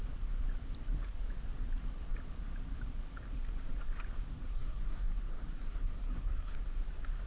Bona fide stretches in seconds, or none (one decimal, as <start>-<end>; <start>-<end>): 0.0-4.4; 6.8-7.3